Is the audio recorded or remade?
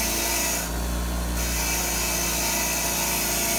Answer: recorded